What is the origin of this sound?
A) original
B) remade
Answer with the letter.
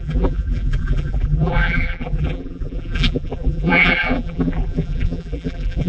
B